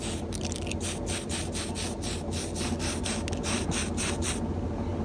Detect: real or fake real